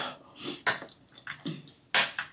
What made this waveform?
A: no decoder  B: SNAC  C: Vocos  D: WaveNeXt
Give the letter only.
A